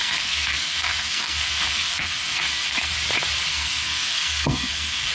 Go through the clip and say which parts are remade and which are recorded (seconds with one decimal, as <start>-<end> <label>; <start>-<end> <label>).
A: 0.0-2.9 remade; 2.9-3.5 recorded; 3.5-5.1 remade